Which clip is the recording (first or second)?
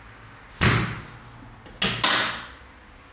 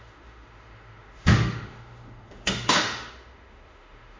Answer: first